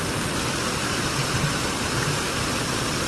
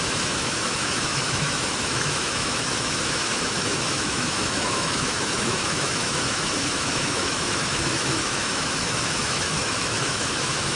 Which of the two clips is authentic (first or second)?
first